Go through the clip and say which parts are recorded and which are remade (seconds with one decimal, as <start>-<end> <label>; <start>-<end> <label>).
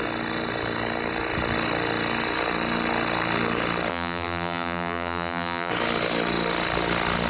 0.0-3.9 recorded; 3.9-5.7 remade; 5.7-7.3 recorded